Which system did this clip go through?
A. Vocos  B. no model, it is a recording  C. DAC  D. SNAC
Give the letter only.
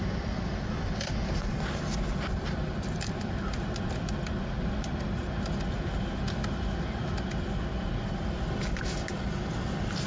B